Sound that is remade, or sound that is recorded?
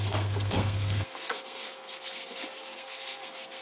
remade